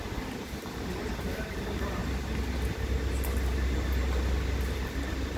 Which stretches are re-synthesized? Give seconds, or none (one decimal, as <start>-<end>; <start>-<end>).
0.0-2.0